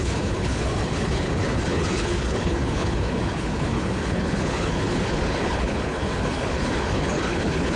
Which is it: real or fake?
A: fake